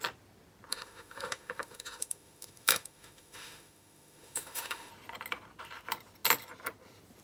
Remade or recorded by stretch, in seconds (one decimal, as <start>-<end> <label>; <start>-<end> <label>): 0.0-0.7 recorded; 0.7-4.9 remade; 4.9-7.2 recorded